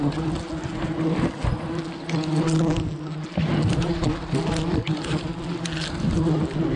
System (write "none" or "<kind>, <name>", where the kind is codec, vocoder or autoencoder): none